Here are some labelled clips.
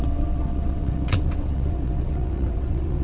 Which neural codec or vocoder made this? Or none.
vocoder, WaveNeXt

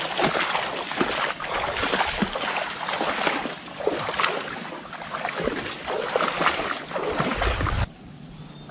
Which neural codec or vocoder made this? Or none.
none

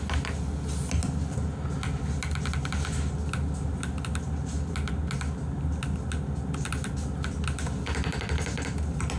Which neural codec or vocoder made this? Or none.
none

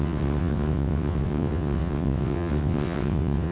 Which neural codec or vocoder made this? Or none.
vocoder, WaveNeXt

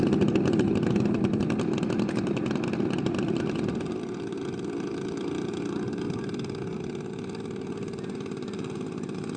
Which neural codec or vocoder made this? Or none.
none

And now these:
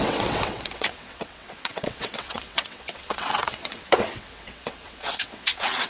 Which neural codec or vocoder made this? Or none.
vocoder, WaveNeXt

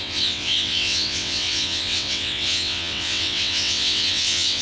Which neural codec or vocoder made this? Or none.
vocoder, WaveNeXt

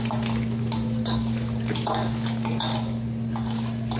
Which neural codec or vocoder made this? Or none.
none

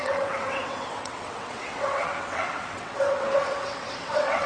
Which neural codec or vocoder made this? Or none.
vocoder, WaveNeXt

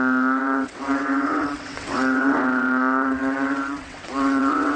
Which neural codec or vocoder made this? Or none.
vocoder, WaveNeXt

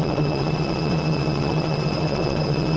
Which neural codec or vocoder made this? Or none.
vocoder, WaveNeXt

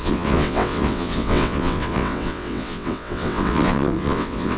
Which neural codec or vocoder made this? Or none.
vocoder, WaveNeXt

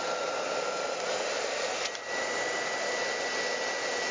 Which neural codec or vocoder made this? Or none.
none